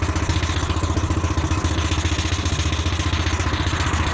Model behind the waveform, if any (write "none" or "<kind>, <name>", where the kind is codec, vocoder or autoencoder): none